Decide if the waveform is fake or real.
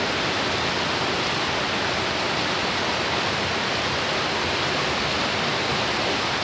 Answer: real